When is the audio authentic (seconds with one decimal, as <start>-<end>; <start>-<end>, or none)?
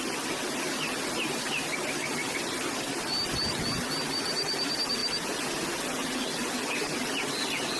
0.0-7.8